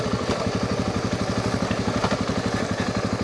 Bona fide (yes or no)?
yes